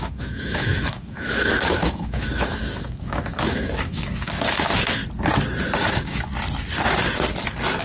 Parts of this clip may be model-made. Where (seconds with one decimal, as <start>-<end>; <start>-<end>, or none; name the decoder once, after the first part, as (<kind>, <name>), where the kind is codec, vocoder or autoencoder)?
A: 0.0-5.0 (autoencoder, DAC-VAE); 5.8-6.3